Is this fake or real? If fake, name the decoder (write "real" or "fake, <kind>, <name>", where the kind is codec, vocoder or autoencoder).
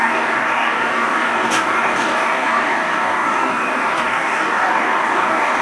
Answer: fake, codec, DAC